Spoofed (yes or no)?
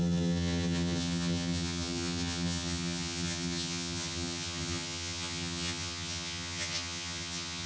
yes